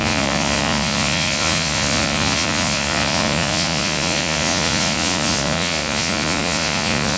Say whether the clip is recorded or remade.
remade